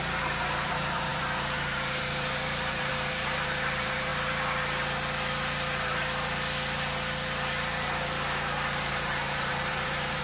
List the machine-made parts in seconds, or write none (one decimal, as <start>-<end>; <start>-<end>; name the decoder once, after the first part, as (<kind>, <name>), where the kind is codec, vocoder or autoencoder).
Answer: 0.0-4.1 (vocoder, BigVGAN v2); 8.9-10.2